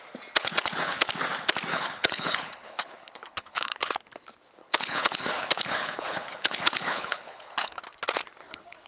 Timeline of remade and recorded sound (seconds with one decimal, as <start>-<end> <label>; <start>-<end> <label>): 0.0-0.4 recorded; 0.4-1.1 remade; 1.1-1.7 recorded; 1.7-3.9 remade; 3.9-4.6 recorded; 4.6-7.8 remade; 7.8-8.4 recorded; 8.4-8.9 remade